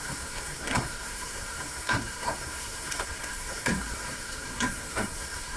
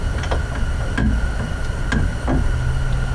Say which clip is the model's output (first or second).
first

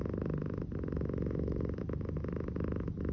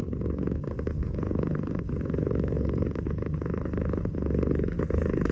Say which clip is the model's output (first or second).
second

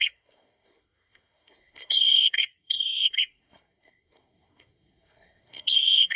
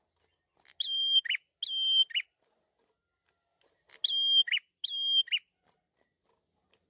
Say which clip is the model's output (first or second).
first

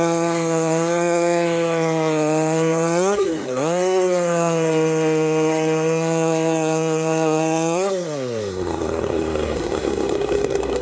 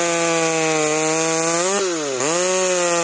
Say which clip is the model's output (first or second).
first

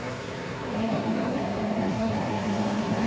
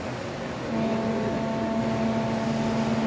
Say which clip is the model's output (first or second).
first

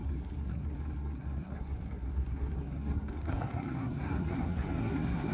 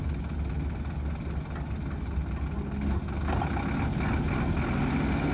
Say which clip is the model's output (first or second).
first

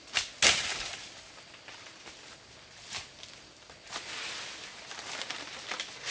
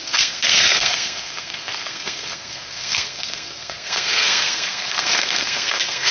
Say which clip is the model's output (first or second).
second